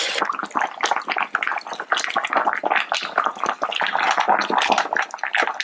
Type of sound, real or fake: real